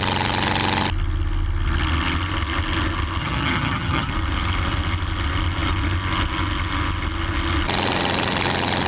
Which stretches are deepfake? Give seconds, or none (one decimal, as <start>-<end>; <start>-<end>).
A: 3.2-4.1